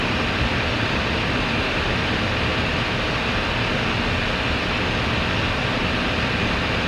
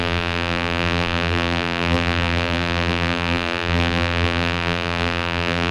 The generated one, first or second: second